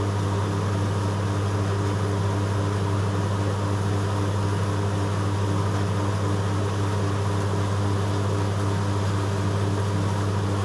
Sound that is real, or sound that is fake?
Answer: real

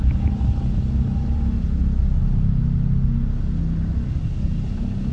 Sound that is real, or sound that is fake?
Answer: real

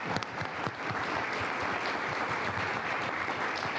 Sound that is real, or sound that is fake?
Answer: fake